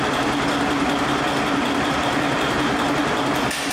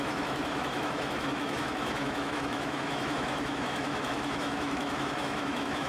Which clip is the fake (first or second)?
second